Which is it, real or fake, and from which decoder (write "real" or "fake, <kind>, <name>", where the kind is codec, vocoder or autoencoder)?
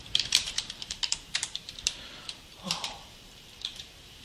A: fake, vocoder, BigVGAN v2